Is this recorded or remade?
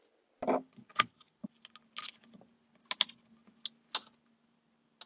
recorded